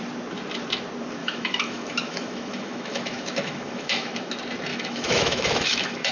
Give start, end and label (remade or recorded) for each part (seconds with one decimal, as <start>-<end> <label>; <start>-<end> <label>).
0.0-1.2 recorded; 1.2-4.3 remade; 4.3-4.7 recorded; 4.7-6.1 remade